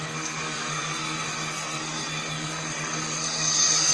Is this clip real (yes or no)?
no